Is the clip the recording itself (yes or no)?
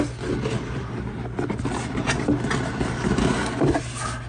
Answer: yes